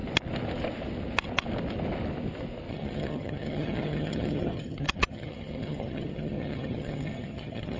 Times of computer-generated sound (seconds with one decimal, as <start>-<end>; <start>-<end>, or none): 2.7-7.8